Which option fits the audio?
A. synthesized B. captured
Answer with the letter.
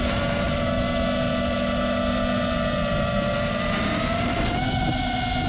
B